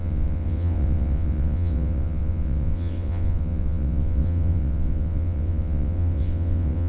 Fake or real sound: fake